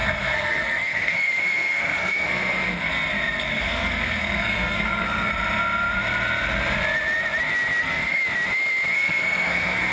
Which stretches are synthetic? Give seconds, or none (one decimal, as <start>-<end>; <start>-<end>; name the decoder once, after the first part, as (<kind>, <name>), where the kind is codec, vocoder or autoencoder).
0.0-2.9 (codec, SNAC); 3.6-5.3; 7.8-8.2; 8.9-9.9